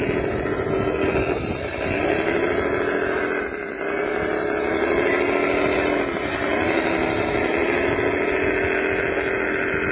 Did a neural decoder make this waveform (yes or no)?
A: no